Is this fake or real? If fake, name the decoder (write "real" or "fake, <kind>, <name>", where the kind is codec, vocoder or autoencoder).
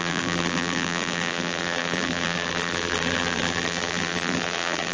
fake, vocoder, BigVGAN v2